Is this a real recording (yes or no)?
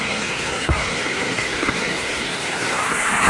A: no